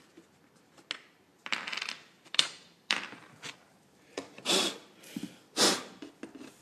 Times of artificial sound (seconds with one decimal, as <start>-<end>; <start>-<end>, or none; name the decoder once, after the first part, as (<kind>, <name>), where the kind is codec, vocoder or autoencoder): 1.3-4.7 (vocoder, BigVGAN v2)